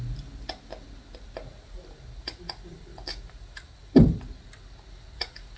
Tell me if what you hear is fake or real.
real